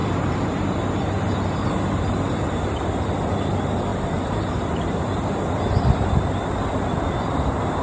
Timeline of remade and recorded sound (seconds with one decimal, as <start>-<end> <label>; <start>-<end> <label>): 0.0-3.9 recorded; 3.9-4.9 remade; 4.9-7.8 recorded